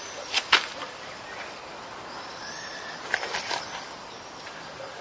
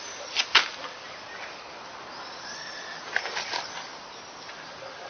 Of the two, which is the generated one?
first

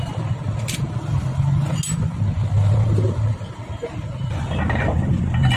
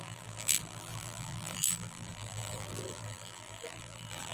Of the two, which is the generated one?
second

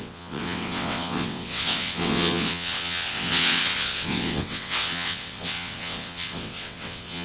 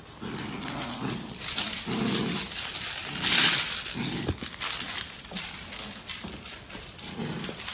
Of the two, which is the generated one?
first